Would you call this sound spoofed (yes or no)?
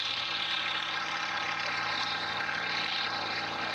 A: yes